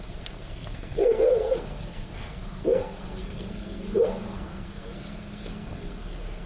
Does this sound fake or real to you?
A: fake